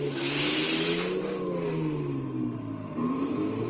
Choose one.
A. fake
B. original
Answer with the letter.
B